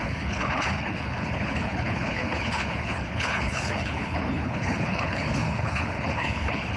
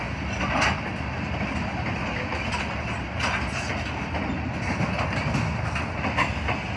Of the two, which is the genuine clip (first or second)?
second